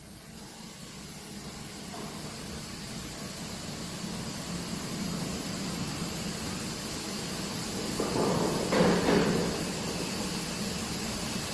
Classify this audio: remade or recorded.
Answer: recorded